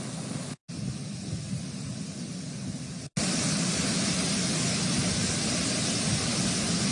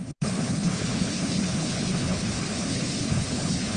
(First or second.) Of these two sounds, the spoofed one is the second